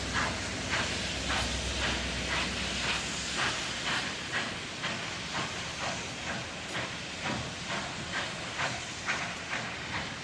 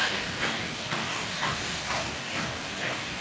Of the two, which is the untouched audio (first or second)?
first